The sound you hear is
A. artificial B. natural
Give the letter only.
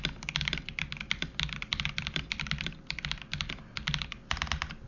B